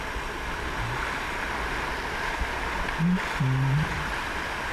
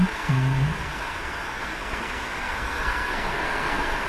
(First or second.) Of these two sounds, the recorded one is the first